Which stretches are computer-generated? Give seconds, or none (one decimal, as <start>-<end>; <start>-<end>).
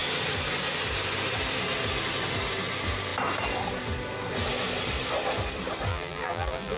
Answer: 5.9-6.8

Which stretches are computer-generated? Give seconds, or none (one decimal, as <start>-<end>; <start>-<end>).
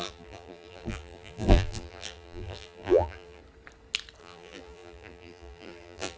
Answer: 0.0-3.4; 4.2-6.2